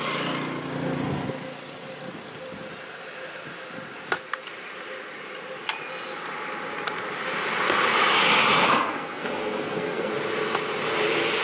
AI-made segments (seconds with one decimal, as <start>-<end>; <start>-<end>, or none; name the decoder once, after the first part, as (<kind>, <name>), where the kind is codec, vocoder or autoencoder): 8.5-10.1 (codec, SNAC)